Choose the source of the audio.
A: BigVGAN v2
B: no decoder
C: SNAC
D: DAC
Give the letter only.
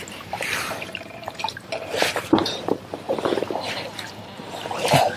A